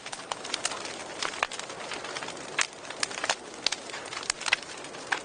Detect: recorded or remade recorded